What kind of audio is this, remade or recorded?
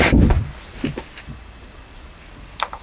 recorded